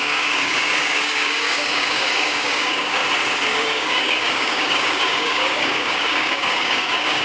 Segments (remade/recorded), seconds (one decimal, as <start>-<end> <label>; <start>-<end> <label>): 0.0-3.0 remade; 3.0-3.5 recorded; 3.5-7.2 remade